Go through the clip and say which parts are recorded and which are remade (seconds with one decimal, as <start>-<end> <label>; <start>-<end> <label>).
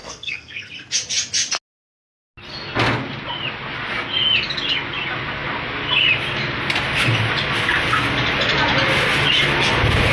0.0-0.7 remade; 0.7-10.1 recorded